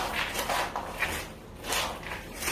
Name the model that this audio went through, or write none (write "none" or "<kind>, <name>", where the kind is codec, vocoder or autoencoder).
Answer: none